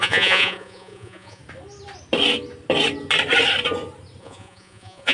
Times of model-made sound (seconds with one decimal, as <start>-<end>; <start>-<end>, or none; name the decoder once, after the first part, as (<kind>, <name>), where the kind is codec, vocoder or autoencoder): 0.0-1.4 (vocoder, Vocos); 4.2-5.1